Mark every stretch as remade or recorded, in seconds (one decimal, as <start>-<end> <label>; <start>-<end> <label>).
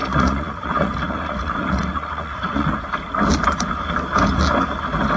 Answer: 0.0-2.8 remade; 2.8-5.2 recorded